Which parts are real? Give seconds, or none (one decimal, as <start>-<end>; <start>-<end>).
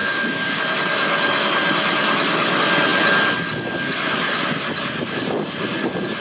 0.6-6.2